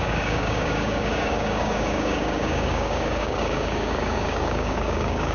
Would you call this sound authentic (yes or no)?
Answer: no